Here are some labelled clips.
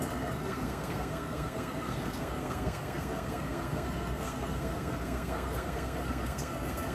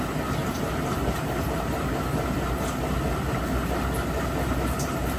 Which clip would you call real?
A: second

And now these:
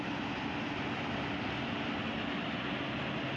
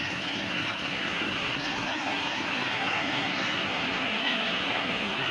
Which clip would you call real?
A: first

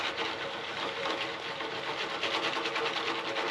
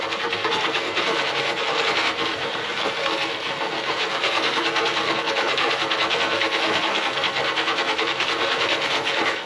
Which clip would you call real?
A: first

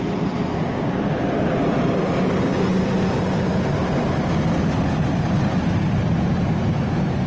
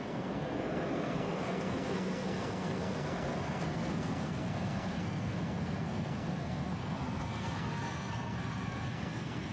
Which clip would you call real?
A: first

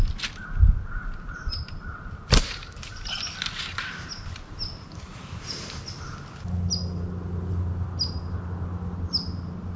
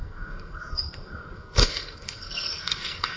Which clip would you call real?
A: first